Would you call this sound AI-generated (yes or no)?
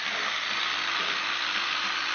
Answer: no